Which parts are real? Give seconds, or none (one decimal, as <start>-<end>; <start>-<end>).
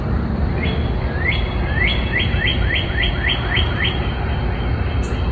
0.0-5.3